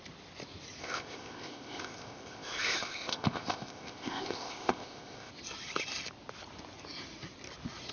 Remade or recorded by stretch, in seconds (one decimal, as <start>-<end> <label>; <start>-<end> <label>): 0.0-0.8 recorded; 0.8-5.3 remade; 5.3-7.9 recorded

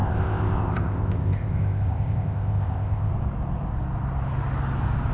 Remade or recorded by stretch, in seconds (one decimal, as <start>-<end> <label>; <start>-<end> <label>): 0.0-3.1 remade; 3.1-5.1 recorded

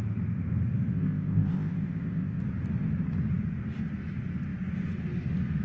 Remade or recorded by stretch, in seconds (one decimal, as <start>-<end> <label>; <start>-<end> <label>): 0.0-0.9 recorded; 0.9-2.4 remade; 2.4-5.6 recorded

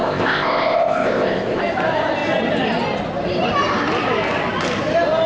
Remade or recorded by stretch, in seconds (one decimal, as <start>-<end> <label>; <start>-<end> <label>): 0.0-1.6 remade; 1.6-5.3 recorded

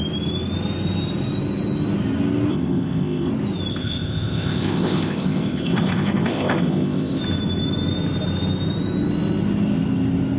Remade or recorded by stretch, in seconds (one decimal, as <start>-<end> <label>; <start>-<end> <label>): 0.0-2.5 recorded; 2.5-3.3 remade; 3.3-3.7 recorded; 3.7-7.2 remade; 7.2-10.4 recorded

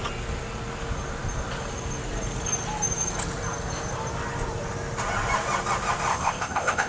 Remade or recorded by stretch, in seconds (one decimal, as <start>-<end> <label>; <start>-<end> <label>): 0.0-6.1 recorded; 6.1-6.9 remade

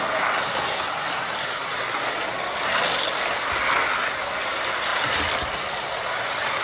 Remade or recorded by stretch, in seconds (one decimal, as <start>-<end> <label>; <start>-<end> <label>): 0.0-6.6 recorded